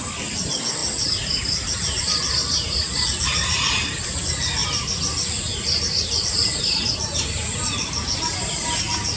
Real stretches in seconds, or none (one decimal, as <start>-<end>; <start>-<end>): 0.0-9.2